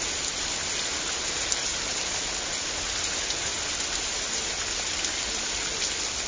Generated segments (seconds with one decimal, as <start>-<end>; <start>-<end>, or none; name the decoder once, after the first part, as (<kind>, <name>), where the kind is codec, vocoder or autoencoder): none